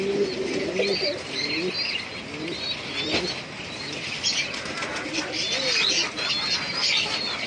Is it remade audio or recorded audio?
recorded